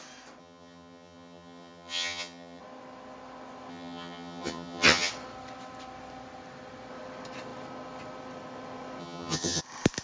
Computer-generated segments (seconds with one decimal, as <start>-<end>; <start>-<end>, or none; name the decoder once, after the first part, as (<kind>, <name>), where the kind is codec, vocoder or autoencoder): 0.4-2.6 (vocoder, HiFi-GAN); 3.7-5.1; 9.0-9.6